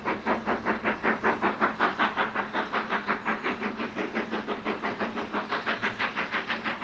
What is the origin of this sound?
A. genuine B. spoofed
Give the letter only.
A